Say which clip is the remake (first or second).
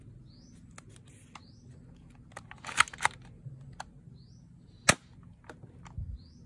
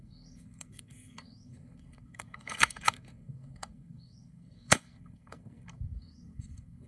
second